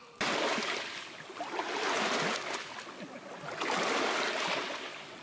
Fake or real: real